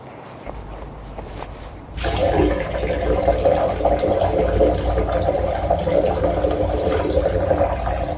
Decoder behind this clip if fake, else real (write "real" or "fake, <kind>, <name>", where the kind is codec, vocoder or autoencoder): real